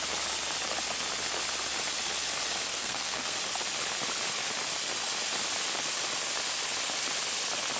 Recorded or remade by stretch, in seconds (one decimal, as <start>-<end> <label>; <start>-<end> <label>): 0.0-2.7 recorded; 2.7-3.4 remade; 3.4-7.8 recorded